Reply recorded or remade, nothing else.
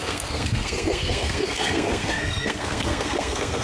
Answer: remade